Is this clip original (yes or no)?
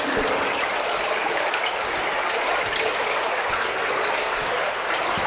yes